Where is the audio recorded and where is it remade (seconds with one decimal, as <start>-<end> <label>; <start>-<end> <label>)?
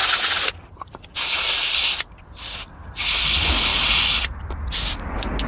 0.0-5.5 recorded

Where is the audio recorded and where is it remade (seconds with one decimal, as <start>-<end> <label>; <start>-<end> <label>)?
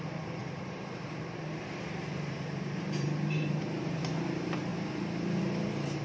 0.0-4.7 remade; 4.7-5.4 recorded; 5.4-6.0 remade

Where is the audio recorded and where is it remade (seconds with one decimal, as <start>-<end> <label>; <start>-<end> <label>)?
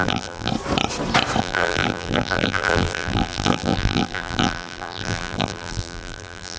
0.0-0.5 remade; 0.5-1.4 recorded; 1.4-6.6 remade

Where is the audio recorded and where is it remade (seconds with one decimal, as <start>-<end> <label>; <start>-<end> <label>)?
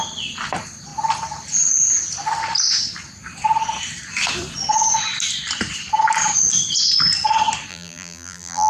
0.0-7.7 recorded; 7.7-8.7 remade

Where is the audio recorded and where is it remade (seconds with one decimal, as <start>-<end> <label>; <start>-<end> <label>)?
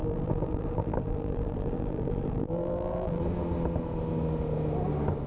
0.0-3.2 remade; 3.2-5.3 recorded